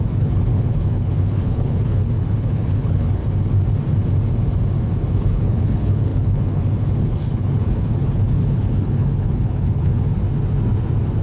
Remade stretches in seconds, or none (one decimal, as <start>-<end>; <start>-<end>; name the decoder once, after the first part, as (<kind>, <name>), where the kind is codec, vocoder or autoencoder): 0.0-3.2 (codec, HILCodec); 5.1-10.2